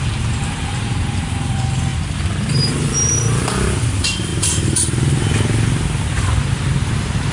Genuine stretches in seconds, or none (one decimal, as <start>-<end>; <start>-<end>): 1.9-3.8; 4.3-6.0